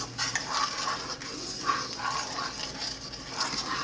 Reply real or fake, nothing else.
real